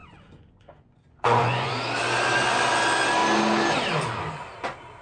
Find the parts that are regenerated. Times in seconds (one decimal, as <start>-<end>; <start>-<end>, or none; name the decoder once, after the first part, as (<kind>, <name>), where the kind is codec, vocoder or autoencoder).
0.0-1.7 (vocoder, Vocos)